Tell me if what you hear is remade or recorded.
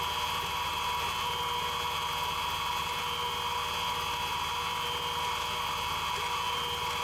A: recorded